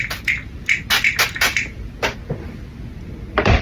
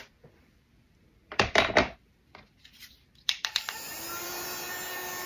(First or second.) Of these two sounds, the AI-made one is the second